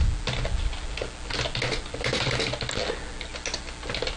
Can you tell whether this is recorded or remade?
recorded